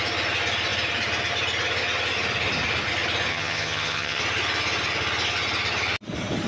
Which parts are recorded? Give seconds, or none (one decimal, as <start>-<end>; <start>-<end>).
0.0-3.3; 4.2-6.5